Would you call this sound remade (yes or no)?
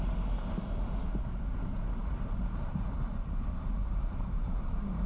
yes